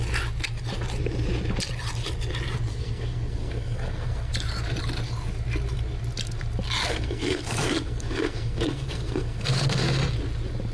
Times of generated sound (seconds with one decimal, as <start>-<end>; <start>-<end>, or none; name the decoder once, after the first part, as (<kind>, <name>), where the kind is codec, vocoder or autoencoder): 2.7-4.3 (codec, SNAC); 6.8-9.8